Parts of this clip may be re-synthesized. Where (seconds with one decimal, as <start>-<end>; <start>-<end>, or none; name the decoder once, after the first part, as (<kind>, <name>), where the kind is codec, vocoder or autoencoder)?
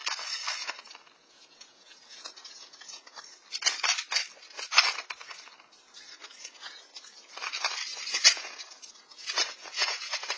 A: 1.3-3.1 (vocoder, Vocos); 6.4-6.9; 8.1-10.4